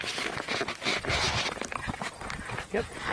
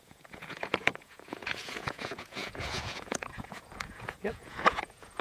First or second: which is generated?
second